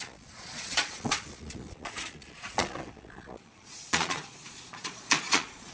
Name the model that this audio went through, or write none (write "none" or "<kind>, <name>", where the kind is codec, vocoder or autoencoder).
vocoder, Vocos